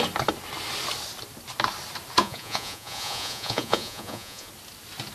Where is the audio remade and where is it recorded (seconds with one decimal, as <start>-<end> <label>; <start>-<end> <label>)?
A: 0.0-2.2 recorded; 2.2-4.5 remade; 4.5-5.1 recorded